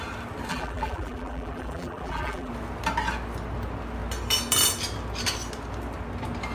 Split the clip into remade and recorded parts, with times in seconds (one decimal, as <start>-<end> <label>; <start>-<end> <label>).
0.0-0.5 recorded; 0.5-2.5 remade; 2.5-6.5 recorded